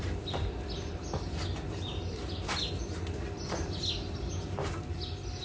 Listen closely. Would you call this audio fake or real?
real